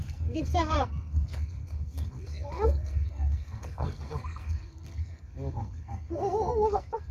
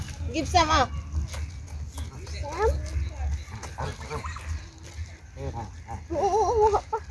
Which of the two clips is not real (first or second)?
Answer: first